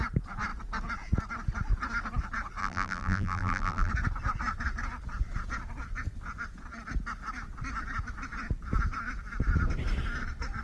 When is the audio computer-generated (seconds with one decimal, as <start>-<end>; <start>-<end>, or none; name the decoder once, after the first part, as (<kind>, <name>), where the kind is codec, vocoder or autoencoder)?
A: 2.6-3.9 (vocoder, BigVGAN v2)